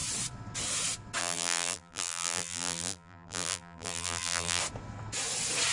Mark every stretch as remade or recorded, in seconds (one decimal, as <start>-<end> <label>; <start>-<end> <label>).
0.0-1.2 recorded; 1.2-4.6 remade; 4.6-5.7 recorded